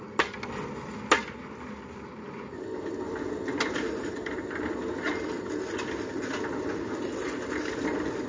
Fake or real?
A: real